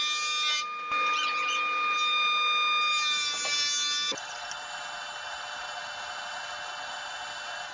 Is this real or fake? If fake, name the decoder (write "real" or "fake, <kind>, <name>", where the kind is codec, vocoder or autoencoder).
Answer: real